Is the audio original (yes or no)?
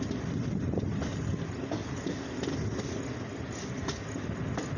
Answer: yes